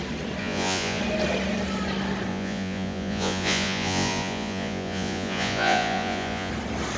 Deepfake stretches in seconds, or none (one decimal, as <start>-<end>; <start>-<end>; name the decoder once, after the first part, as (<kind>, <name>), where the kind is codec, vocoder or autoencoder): 0.4-1.0 (vocoder, Vocos); 2.3-6.5